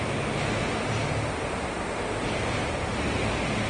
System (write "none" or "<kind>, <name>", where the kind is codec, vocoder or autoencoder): none